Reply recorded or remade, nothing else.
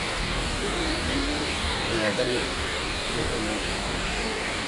remade